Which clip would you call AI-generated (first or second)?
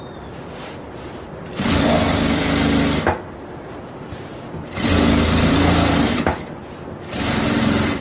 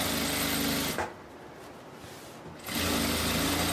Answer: first